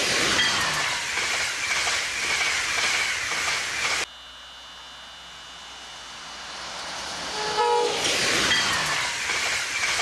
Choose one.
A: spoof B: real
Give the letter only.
B